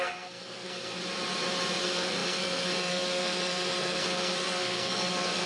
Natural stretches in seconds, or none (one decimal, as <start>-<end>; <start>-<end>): 1.0-1.8